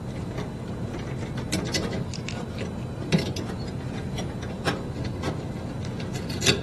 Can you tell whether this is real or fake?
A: real